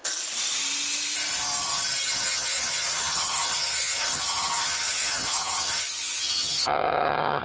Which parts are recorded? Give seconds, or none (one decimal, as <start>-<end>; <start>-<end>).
0.0-2.2